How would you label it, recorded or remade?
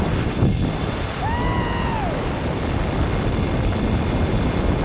recorded